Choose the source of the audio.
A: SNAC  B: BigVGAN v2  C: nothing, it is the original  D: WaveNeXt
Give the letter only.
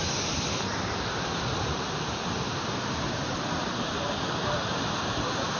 C